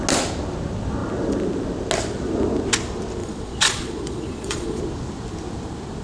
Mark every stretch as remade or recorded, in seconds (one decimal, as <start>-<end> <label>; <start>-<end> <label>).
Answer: 0.0-3.2 recorded; 3.2-4.8 remade; 4.8-6.0 recorded